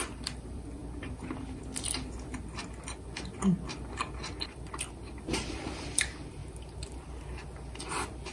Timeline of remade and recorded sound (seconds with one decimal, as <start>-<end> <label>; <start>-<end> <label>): 0.0-0.8 remade; 0.8-5.5 recorded; 5.5-6.4 remade; 6.4-7.9 recorded; 7.9-8.3 remade